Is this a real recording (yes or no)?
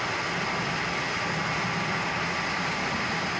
yes